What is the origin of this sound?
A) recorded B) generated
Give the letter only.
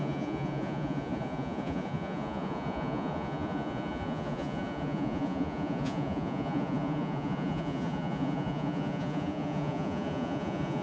B